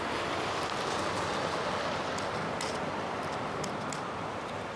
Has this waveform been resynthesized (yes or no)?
no